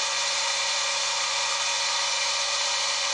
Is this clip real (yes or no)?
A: no